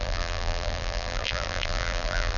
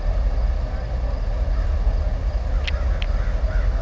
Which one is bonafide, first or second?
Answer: second